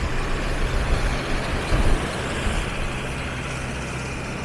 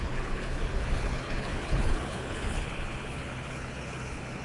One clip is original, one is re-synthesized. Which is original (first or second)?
first